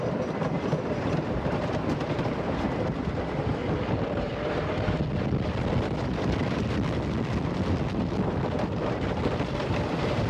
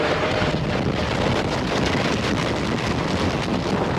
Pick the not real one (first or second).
first